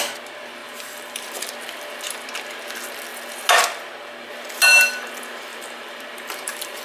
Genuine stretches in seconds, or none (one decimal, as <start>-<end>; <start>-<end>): 0.0-0.6; 1.5-5.5